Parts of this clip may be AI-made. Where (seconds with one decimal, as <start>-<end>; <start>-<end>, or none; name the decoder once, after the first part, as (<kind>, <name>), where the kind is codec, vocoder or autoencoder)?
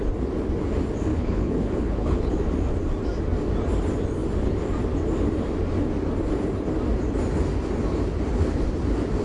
1.1-2.4 (codec, HILCodec)